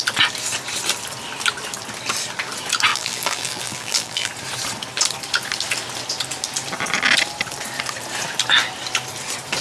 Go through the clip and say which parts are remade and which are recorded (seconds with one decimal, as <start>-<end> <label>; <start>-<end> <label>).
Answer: 0.0-2.9 recorded; 2.9-4.3 remade; 4.3-9.6 recorded